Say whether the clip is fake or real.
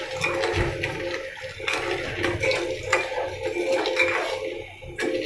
real